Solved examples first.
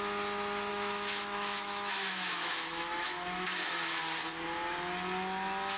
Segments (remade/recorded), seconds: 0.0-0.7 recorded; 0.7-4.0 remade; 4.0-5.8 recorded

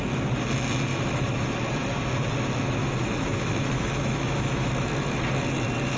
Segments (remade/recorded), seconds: 0.0-0.9 recorded; 0.9-1.5 remade; 1.5-2.8 recorded; 2.8-4.7 remade; 4.7-6.0 recorded

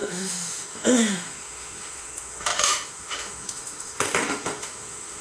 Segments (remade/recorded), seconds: 0.0-5.2 remade

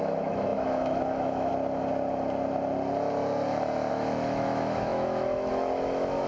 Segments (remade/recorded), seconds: 0.0-1.5 remade; 1.5-3.9 recorded; 3.9-6.3 remade

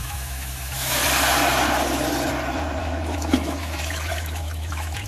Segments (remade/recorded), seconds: 0.0-1.0 remade; 1.0-2.8 recorded; 2.8-5.1 remade

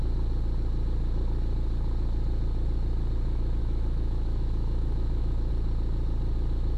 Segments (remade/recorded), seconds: 0.0-3.6 recorded; 3.6-5.5 remade; 5.5-6.8 recorded

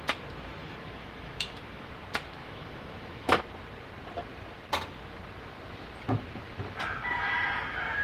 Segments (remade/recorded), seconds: 0.0-0.6 recorded; 0.6-1.9 remade; 1.9-2.4 recorded; 2.4-3.4 remade; 3.4-8.0 recorded

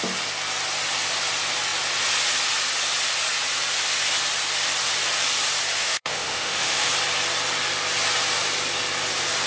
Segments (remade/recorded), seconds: 0.0-5.8 recorded; 5.8-6.9 remade; 6.9-9.5 recorded